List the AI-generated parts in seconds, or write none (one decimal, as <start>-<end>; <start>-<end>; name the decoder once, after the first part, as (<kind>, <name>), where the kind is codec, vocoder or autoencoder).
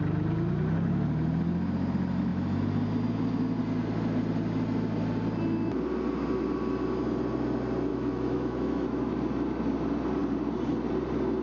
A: 7.9-9.1 (autoencoder, DAC-VAE)